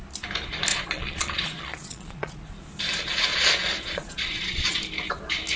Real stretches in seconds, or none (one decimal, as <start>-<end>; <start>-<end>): 0.0-0.7; 2.4-3.3; 4.8-5.6